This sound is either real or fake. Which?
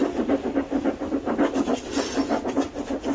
real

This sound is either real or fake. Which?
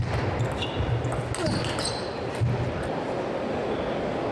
real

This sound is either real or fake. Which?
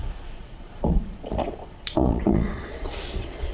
fake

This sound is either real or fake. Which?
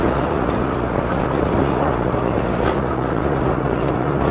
fake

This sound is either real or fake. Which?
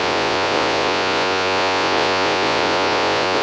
fake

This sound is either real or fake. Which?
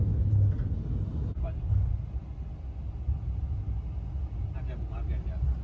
real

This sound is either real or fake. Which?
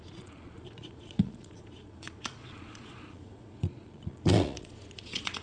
fake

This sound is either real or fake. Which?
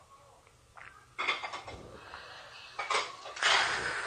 real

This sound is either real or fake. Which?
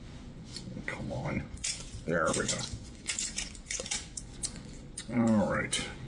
fake